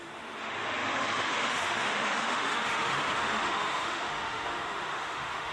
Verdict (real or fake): fake